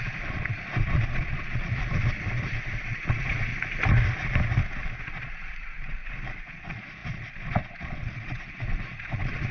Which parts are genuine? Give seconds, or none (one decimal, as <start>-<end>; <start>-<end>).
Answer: 1.7-2.8; 3.5-5.0; 6.0-6.5